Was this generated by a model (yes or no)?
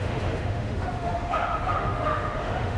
yes